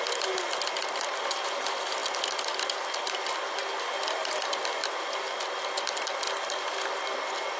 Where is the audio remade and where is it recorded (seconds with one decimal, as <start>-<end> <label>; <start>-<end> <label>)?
0.0-7.6 recorded